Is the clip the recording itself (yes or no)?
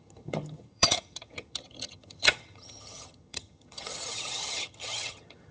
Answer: no